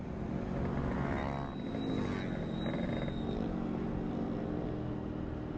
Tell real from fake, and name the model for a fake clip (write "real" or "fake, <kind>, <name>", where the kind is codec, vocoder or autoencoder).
real